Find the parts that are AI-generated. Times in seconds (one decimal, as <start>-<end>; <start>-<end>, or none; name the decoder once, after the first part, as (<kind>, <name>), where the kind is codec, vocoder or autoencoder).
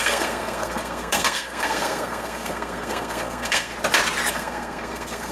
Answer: 0.0-3.7 (codec, SNAC); 4.3-5.3